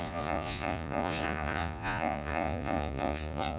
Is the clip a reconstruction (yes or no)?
yes